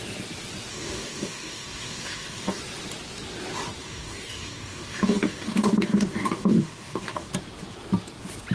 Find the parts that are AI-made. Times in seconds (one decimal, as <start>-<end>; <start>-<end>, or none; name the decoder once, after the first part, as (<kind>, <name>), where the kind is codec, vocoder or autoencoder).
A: 0.7-2.6 (codec, DAC); 3.8-7.3